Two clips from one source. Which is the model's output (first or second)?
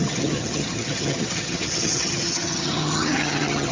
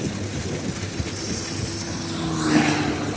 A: first